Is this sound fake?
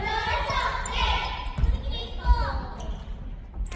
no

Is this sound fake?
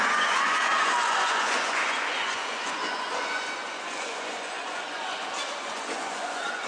yes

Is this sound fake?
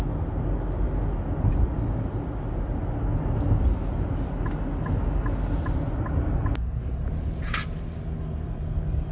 no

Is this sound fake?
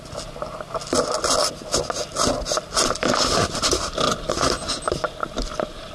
no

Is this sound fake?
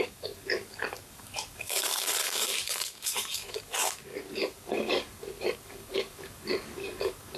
yes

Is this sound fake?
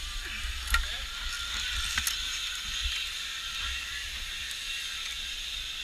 no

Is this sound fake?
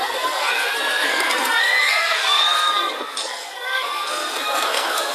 yes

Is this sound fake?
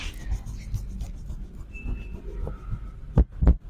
no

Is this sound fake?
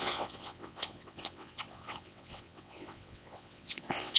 yes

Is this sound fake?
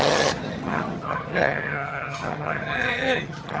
yes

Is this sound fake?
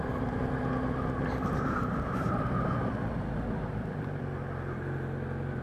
no